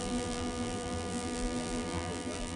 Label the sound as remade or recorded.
remade